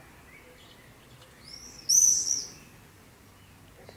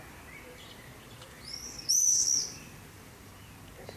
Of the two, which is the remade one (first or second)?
second